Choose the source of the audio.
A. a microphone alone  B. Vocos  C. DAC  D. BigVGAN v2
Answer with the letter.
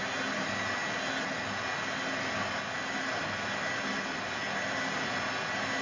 A